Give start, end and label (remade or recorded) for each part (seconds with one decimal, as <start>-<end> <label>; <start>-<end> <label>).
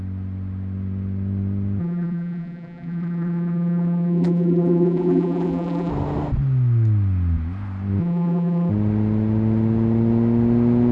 0.0-1.8 recorded; 1.8-5.9 remade; 5.9-8.0 recorded; 8.0-8.7 remade; 8.7-10.9 recorded